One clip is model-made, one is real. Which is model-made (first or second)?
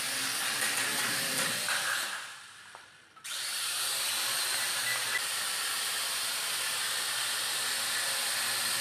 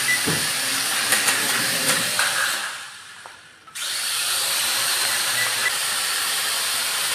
second